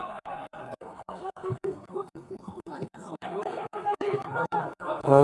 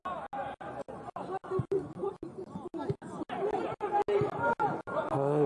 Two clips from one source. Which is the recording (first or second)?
second